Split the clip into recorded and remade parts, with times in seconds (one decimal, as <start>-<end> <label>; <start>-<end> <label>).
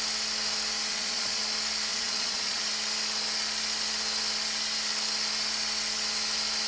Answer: 0.0-0.9 recorded; 0.9-1.4 remade; 1.4-1.9 recorded; 1.9-2.6 remade; 2.6-6.7 recorded